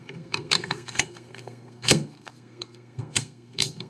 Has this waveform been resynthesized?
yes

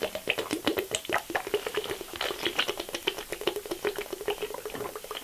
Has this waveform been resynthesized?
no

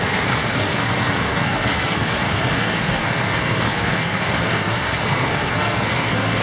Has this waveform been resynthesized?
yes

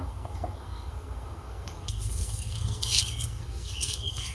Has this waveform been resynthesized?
yes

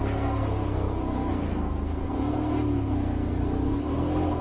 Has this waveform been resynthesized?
yes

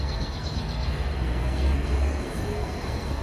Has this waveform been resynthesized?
yes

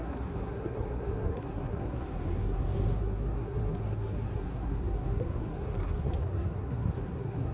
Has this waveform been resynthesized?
yes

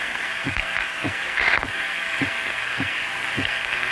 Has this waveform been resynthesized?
yes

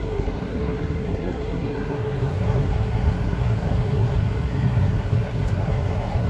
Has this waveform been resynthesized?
yes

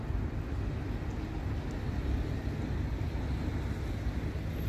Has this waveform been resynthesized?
no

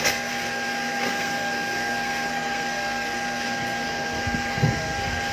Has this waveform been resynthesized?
yes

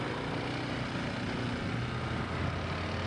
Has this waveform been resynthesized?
no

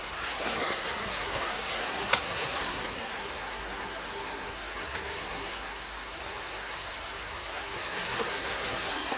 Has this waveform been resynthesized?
yes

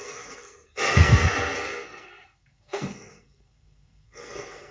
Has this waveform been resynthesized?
yes